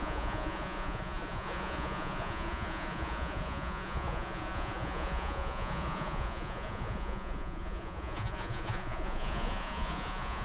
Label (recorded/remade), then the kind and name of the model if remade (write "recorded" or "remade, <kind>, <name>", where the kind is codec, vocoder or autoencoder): remade, vocoder, Vocos